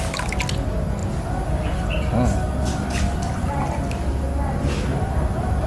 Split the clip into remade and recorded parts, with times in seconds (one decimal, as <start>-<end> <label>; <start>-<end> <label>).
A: 0.0-5.7 recorded